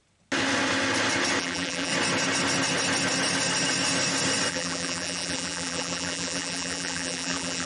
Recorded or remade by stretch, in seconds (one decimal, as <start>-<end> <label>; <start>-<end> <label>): 0.0-1.4 recorded; 1.4-1.9 remade; 1.9-4.5 recorded; 4.5-7.7 remade